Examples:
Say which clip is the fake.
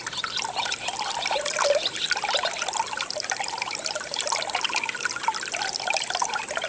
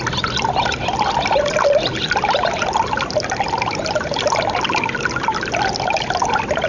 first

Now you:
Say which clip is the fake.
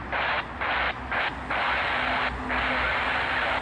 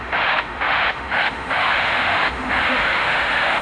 second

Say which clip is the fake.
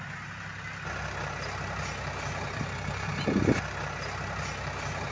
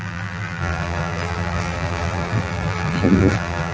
second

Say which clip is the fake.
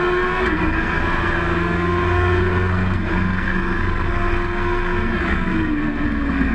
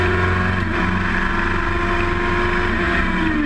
first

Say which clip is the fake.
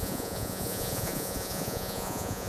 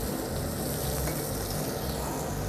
first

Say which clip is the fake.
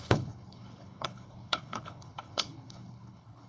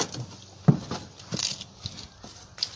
first